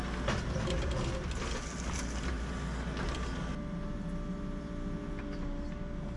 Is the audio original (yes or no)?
yes